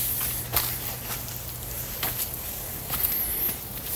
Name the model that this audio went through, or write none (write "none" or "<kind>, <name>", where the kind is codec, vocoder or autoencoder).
none